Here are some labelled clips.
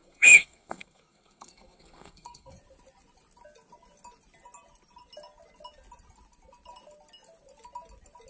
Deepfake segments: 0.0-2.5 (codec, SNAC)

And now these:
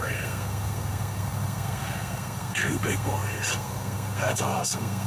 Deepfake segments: 0.0-5.1 (codec, SNAC)

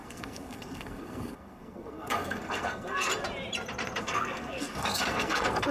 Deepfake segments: 0.0-3.1 (codec, SNAC); 4.0-5.7